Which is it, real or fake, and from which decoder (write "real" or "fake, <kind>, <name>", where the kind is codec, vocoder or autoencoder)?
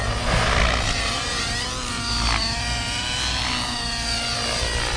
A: real